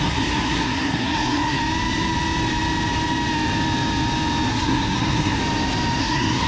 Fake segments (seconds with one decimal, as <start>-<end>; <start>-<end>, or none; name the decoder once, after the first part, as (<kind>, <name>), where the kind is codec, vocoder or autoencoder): 0.0-1.6 (codec, SNAC); 4.5-5.4; 6.0-6.5